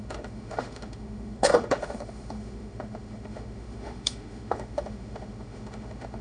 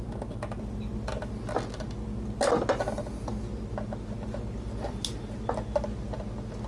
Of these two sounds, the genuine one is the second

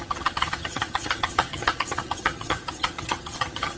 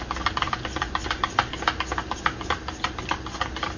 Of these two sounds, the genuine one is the second